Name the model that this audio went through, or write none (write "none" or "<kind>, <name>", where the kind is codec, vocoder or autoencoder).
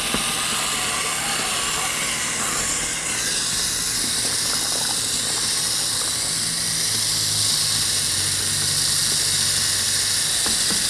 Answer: none